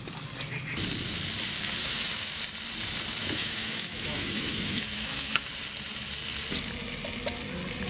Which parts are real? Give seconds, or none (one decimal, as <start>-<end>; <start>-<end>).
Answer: 0.0-1.8; 2.4-3.2; 5.5-7.9